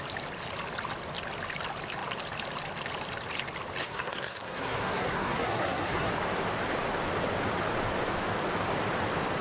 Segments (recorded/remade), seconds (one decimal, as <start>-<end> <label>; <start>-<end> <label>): 0.0-3.8 recorded; 3.8-6.1 remade; 6.1-9.4 recorded